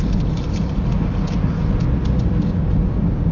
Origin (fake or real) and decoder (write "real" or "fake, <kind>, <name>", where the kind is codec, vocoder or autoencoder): real